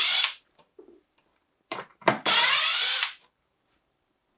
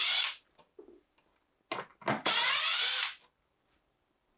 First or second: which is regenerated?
first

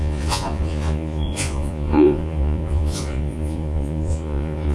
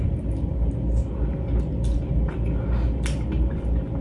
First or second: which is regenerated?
first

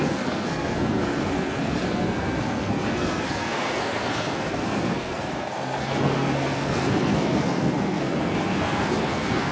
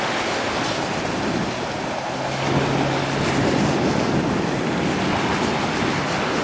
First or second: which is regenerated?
first